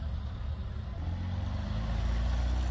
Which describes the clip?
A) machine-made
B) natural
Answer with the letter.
B